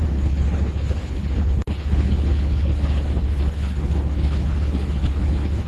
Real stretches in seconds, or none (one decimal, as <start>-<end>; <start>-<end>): none